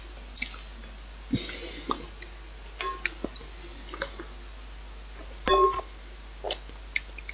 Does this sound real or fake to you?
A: real